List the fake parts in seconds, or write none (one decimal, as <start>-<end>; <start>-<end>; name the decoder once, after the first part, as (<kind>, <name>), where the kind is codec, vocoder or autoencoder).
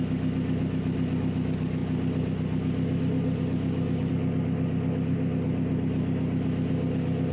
none